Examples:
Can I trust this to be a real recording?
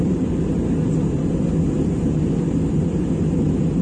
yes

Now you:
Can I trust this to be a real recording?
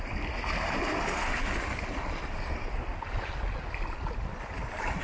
yes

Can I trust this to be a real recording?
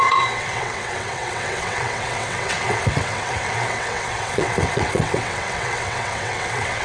no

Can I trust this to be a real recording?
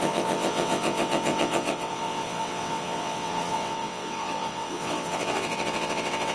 no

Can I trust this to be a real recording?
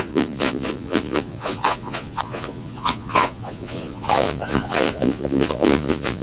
no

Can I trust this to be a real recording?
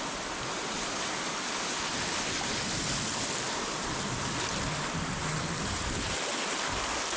yes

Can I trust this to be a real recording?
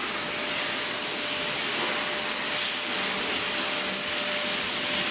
yes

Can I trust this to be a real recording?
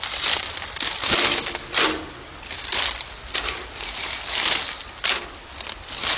yes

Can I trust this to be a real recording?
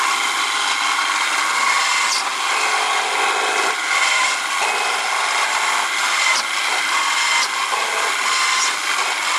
yes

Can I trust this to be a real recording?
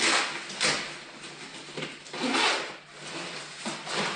yes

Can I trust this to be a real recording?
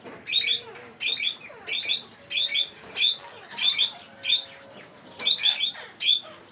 yes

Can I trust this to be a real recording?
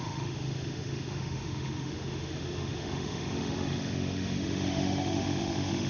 no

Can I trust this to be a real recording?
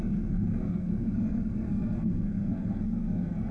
no